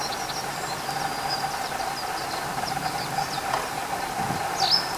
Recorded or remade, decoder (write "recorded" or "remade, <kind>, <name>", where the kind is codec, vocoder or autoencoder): recorded